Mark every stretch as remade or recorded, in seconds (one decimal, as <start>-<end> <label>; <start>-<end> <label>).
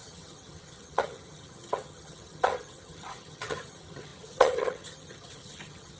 0.0-6.0 remade